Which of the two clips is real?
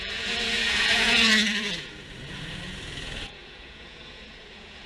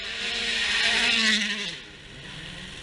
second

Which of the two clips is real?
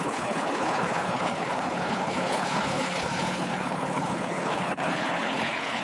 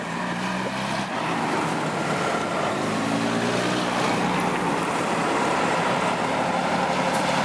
second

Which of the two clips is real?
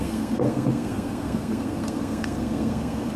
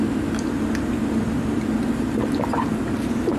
second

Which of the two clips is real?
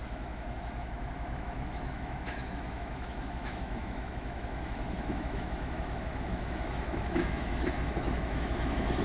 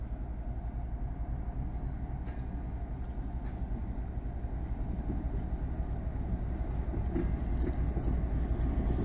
second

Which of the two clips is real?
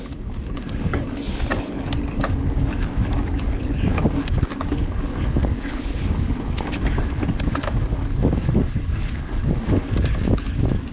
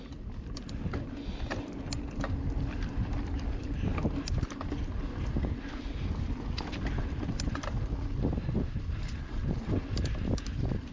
second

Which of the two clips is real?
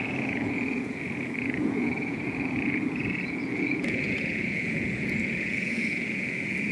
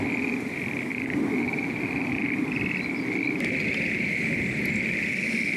second